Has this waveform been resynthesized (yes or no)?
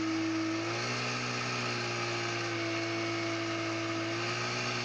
no